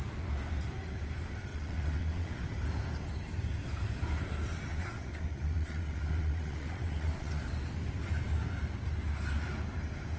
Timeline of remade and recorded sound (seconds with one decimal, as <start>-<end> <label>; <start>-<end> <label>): 0.0-1.5 recorded; 1.5-2.4 remade; 2.4-4.7 recorded; 4.7-7.4 remade; 7.4-10.2 recorded